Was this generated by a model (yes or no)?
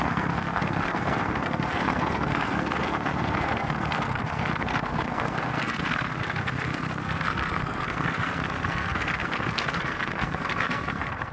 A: yes